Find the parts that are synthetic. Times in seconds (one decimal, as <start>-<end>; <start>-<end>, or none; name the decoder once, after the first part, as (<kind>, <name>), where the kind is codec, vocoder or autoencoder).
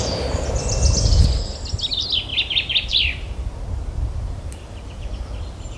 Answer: 2.3-5.8 (vocoder, BigVGAN v2)